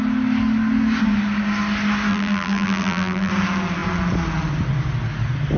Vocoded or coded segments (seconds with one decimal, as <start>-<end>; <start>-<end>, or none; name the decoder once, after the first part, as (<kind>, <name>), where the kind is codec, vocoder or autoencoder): 2.1-3.3 (vocoder, BigVGAN v2)